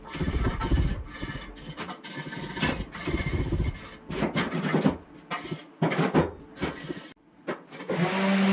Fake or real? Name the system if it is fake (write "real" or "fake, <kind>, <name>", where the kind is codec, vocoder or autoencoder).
real